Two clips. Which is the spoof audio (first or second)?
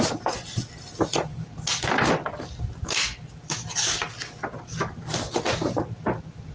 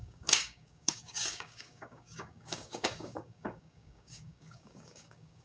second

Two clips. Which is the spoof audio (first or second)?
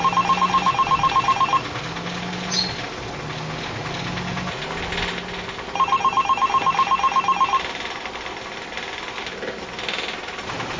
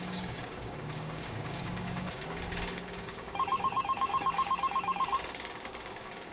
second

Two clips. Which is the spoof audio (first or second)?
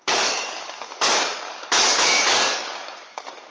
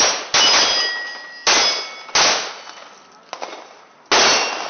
first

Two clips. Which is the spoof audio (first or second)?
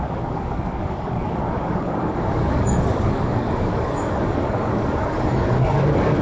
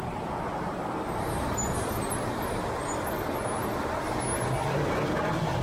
first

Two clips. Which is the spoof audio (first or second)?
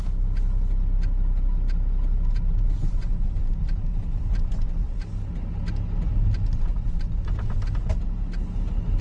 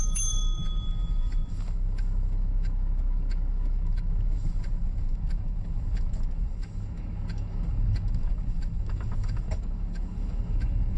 second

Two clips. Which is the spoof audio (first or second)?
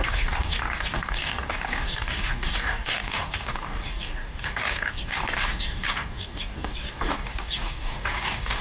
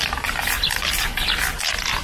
first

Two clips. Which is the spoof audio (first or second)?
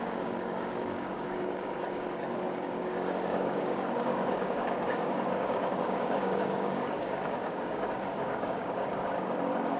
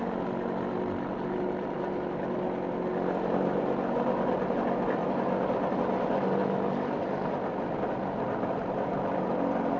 first